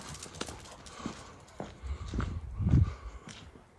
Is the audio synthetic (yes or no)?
no